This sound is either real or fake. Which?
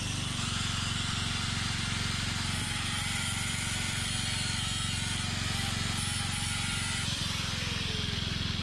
real